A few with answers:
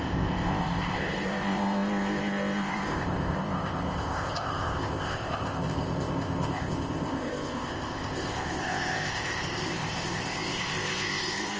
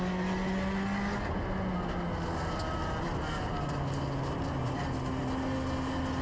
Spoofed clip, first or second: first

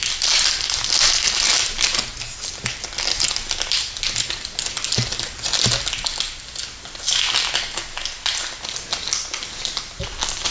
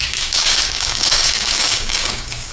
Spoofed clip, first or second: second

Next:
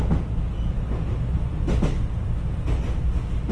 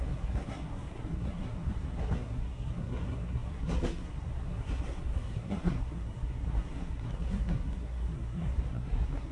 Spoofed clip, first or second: second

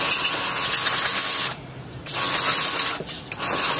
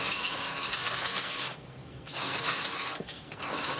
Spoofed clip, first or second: second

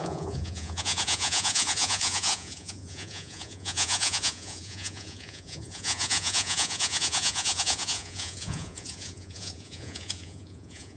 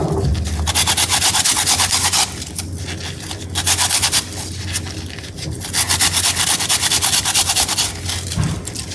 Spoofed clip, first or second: first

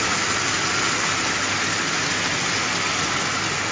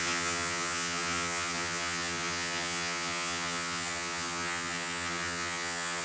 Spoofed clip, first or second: second